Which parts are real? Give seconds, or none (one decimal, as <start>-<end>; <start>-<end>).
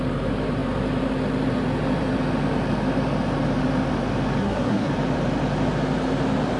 0.0-4.4; 4.9-6.6